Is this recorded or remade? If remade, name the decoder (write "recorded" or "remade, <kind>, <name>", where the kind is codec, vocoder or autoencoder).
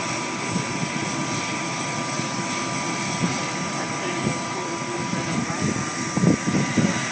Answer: recorded